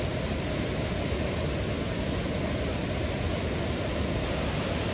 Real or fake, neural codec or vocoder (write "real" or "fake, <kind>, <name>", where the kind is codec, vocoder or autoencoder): real